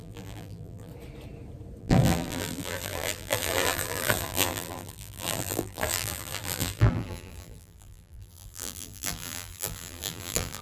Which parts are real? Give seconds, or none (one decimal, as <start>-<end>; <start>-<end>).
0.9-1.8